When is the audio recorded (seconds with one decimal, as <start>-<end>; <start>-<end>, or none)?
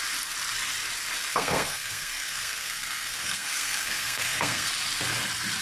0.0-1.3; 4.7-5.6